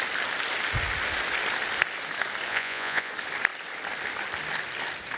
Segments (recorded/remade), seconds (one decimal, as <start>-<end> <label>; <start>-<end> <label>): 0.0-2.5 recorded; 2.5-3.1 remade; 3.1-5.2 recorded